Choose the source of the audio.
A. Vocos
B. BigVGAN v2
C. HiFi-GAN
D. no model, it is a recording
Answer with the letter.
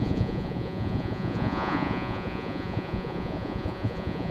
A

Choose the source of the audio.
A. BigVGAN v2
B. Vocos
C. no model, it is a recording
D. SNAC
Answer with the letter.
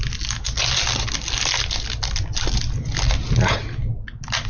C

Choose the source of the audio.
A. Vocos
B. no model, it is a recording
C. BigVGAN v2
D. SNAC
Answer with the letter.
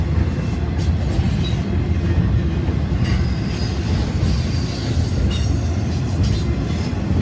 B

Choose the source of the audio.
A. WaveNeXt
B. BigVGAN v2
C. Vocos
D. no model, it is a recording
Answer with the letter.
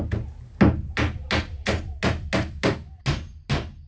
D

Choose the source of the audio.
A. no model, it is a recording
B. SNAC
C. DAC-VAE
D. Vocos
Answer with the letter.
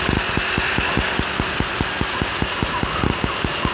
A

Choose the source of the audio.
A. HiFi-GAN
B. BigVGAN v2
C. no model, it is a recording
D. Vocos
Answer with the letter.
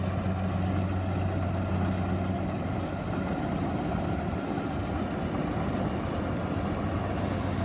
C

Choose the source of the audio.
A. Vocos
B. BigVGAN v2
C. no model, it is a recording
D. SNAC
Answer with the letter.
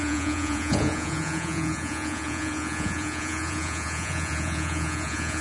A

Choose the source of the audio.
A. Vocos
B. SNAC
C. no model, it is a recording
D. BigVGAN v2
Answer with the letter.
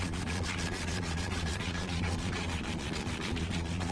A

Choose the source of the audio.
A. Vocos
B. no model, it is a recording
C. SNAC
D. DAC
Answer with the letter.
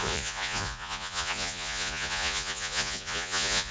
A